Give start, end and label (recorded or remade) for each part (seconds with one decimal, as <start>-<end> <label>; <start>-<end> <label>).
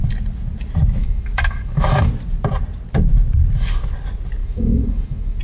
0.0-1.0 recorded; 1.0-2.1 remade; 2.1-4.4 recorded; 4.4-5.4 remade